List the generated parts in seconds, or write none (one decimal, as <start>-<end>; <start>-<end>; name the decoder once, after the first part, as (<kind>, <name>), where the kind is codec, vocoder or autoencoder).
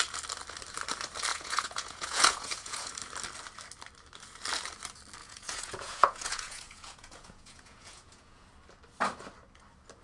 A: 1.3-2.9 (vocoder, Vocos); 5.2-8.5